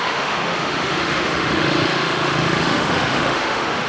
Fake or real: fake